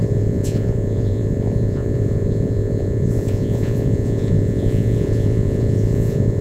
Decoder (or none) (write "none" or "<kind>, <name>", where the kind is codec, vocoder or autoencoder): vocoder, Vocos